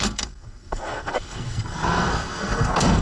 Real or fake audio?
fake